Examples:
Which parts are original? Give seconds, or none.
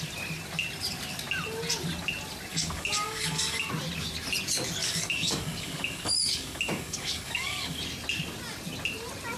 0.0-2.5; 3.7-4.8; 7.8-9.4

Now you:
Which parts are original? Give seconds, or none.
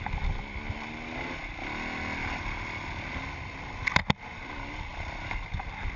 0.0-6.0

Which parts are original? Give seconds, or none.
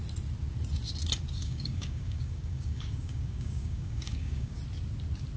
0.0-1.4; 4.6-5.4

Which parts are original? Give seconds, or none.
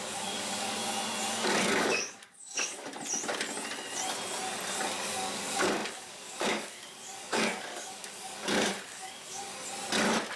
0.8-1.3; 2.9-5.0; 9.5-10.4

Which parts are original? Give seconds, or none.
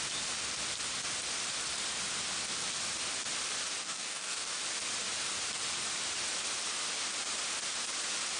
0.0-3.8; 4.6-8.4